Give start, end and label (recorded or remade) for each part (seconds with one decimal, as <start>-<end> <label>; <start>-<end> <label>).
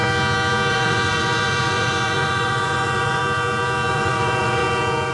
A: 0.0-0.7 recorded; 0.7-3.2 remade; 3.2-3.9 recorded; 3.9-4.6 remade; 4.6-5.1 recorded